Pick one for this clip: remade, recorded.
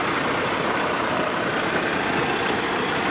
remade